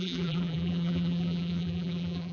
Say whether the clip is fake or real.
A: fake